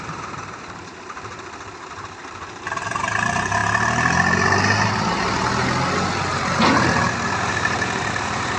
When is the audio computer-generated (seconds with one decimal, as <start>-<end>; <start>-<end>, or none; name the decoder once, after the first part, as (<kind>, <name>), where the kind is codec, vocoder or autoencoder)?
0.0-3.6 (vocoder, BigVGAN v2); 7.3-8.6